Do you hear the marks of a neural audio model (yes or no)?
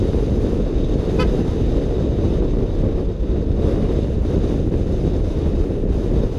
no